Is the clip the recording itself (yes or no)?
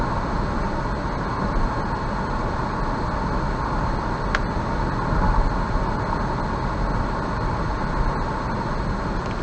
yes